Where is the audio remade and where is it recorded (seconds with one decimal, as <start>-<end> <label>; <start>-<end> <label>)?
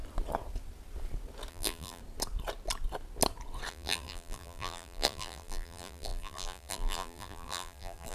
0.0-1.5 recorded; 1.5-2.0 remade; 2.0-3.7 recorded; 3.7-8.1 remade